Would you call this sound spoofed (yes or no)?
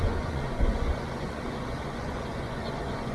yes